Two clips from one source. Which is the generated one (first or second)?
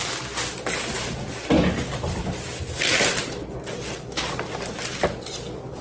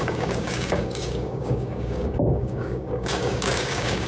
second